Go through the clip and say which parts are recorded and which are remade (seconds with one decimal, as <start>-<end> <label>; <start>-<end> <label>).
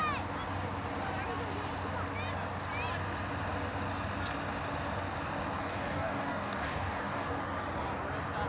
0.0-5.6 recorded; 5.6-7.4 remade; 7.4-8.5 recorded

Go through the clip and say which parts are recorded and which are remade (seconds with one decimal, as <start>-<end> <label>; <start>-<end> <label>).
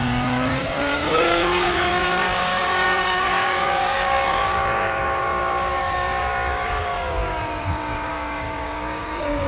0.0-9.5 remade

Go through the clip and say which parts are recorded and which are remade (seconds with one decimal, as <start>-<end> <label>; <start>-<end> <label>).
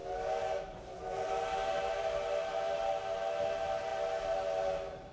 0.0-1.0 remade; 1.0-5.1 recorded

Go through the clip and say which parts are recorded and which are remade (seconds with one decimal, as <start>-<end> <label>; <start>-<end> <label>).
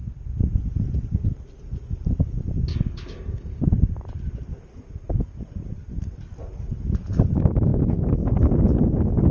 0.0-2.7 recorded; 2.7-3.6 remade; 3.6-9.3 recorded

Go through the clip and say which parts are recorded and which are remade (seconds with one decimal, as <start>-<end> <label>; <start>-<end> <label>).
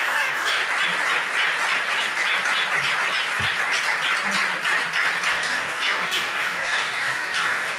0.0-0.6 remade; 0.6-5.3 recorded; 5.3-7.8 remade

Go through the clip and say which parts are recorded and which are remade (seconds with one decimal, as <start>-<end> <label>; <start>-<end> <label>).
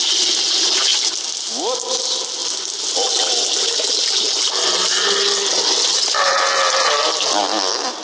0.0-8.0 recorded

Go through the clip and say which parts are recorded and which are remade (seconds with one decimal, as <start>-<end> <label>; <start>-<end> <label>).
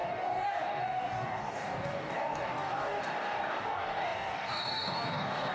0.0-5.5 remade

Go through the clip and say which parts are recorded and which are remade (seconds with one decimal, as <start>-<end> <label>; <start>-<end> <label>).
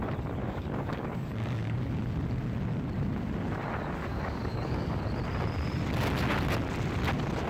0.0-0.4 recorded; 0.4-1.9 remade; 1.9-4.1 recorded; 4.1-5.0 remade; 5.0-7.5 recorded